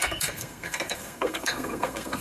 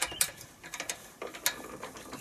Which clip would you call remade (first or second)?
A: first